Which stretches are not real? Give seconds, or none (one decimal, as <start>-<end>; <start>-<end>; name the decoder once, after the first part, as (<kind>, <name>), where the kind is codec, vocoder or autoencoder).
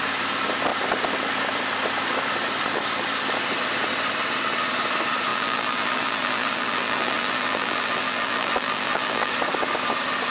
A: 5.3-9.3 (vocoder, BigVGAN v2)